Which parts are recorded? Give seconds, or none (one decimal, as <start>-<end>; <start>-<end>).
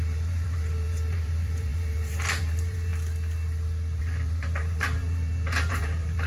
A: 2.9-4.0